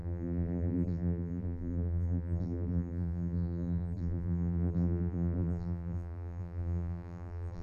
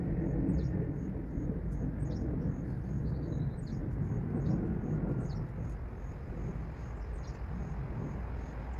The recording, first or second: second